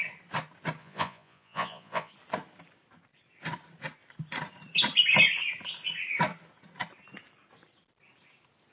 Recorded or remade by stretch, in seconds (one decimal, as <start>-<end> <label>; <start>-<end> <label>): 0.0-0.8 recorded; 0.8-2.1 remade; 2.1-8.7 recorded